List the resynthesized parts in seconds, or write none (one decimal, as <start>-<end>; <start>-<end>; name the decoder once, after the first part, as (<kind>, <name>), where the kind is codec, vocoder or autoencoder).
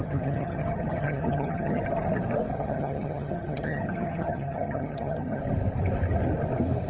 0.0-1.8 (vocoder, HiFi-GAN); 2.5-5.4